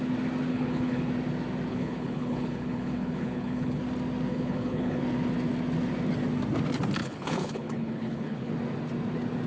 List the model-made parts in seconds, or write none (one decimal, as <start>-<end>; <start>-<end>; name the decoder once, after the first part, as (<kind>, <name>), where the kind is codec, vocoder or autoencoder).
0.5-1.1 (codec, HILCodec); 1.7-3.8; 4.3-5.0; 7.0-8.5